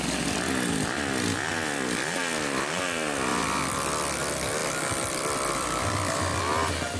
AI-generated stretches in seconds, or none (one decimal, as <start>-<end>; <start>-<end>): 1.5-2.2; 3.3-4.0; 4.6-6.4